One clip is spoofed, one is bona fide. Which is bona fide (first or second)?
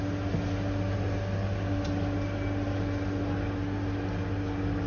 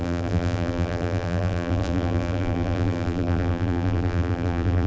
first